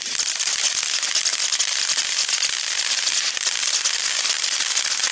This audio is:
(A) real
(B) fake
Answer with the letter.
A